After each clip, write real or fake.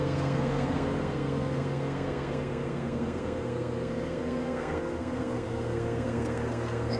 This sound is fake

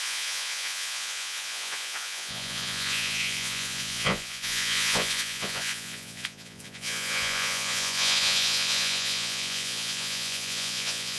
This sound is fake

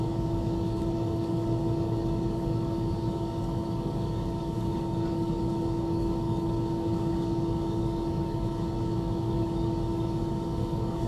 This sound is fake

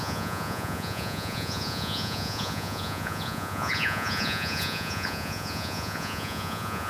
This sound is fake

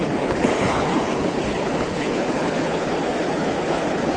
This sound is fake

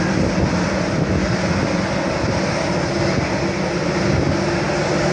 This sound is real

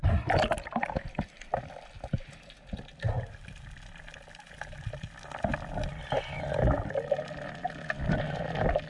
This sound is real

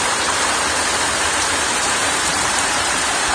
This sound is fake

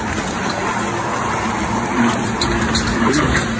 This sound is real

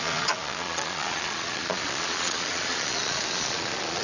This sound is fake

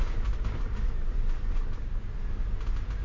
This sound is real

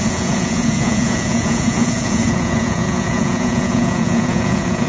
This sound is fake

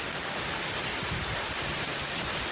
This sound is real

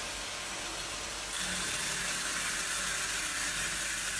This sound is real